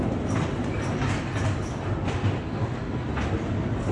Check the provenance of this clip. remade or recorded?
recorded